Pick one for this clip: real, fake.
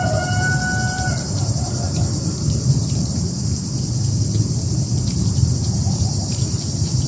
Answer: fake